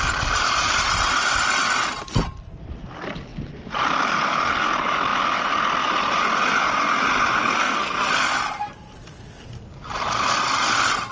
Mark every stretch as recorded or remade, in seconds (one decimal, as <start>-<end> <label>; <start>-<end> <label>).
0.0-7.4 recorded; 7.4-8.1 remade; 8.1-11.1 recorded